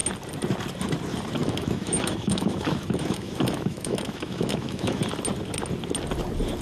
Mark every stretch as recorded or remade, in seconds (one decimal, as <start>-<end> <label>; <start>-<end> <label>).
0.0-1.4 recorded; 1.4-5.0 remade; 5.0-6.6 recorded